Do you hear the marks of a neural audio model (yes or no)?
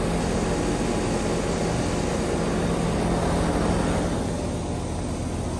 no